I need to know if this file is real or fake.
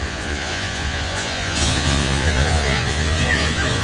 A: fake